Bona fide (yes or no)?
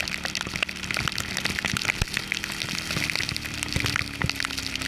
yes